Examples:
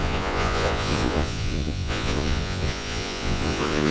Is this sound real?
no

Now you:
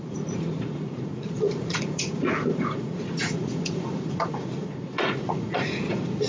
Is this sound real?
no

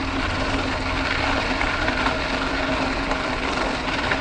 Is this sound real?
yes